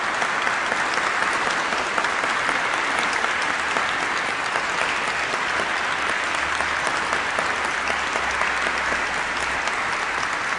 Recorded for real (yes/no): yes